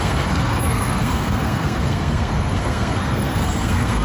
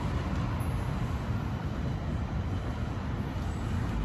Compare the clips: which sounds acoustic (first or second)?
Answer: second